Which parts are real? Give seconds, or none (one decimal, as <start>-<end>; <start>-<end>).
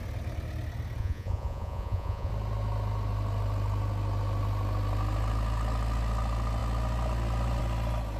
0.0-1.0; 2.3-8.2